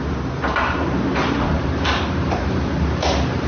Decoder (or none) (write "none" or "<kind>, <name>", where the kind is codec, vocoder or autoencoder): vocoder, BigVGAN v2